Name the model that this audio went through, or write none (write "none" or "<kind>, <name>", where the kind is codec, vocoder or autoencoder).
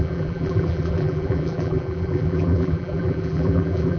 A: vocoder, BigVGAN v2